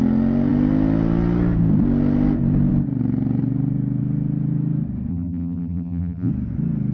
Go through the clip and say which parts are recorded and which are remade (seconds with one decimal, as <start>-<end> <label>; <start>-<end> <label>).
0.0-5.1 recorded; 5.1-6.3 remade; 6.3-6.9 recorded